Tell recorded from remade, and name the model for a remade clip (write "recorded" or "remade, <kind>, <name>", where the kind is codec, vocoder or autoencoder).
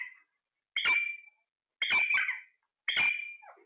recorded